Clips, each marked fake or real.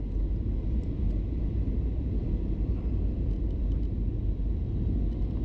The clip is real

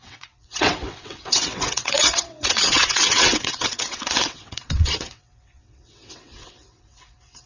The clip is fake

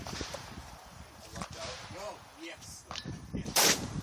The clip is fake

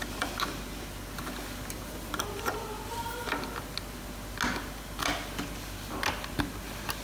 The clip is real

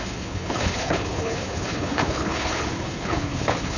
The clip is fake